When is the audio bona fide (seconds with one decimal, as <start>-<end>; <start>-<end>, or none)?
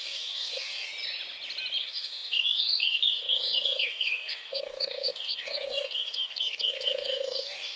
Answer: 0.9-1.8